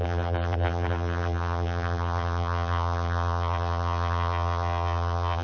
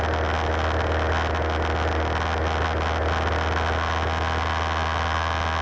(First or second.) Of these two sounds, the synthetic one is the first